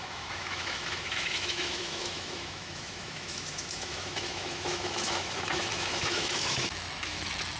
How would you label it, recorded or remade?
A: remade